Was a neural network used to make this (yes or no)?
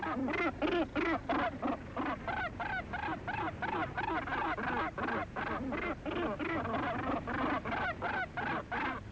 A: no